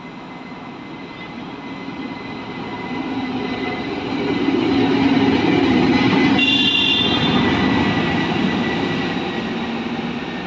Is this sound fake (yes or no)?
no